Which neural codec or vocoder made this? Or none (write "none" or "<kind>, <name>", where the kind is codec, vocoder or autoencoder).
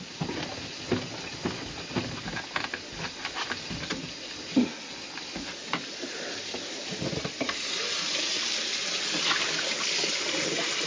none